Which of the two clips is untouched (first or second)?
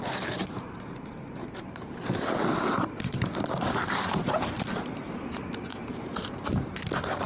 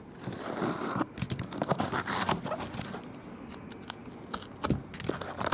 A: second